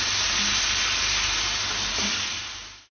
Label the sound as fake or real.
real